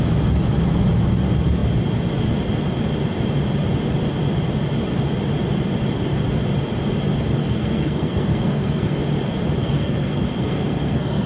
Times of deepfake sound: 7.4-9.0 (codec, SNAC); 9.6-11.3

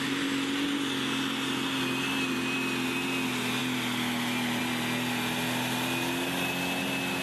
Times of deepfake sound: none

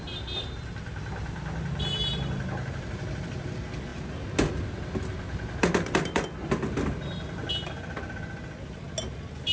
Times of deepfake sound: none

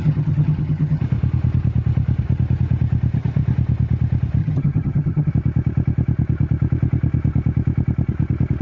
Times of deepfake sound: 0.0-1.0 (vocoder, HiFi-GAN); 4.4-5.3

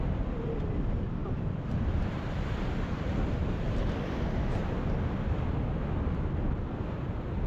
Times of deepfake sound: 1.2-2.7 (vocoder, BigVGAN v2)